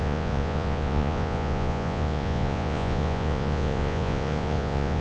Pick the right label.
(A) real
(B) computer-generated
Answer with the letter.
B